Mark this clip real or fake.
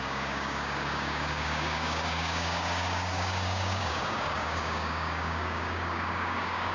fake